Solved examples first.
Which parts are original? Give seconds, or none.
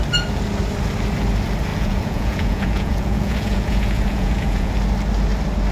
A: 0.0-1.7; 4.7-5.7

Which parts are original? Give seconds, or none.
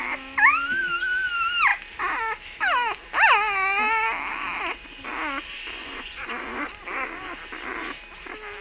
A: 0.0-5.8; 6.6-8.6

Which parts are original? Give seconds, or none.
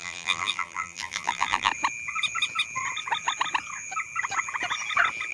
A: 1.7-5.3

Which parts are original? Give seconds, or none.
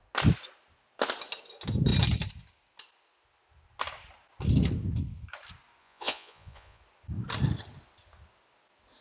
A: 0.0-5.8; 6.8-9.0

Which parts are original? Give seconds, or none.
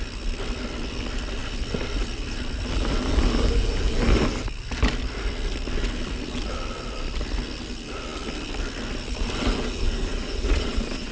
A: 0.0-10.1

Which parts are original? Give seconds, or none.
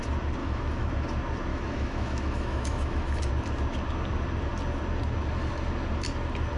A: 0.0-0.4; 0.9-1.5; 3.2-6.6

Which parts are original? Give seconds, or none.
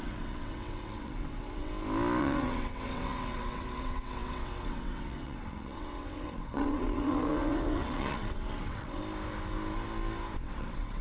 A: 1.7-2.2; 9.0-10.4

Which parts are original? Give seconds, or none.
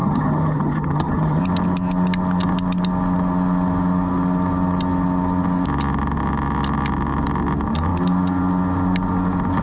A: 1.4-9.6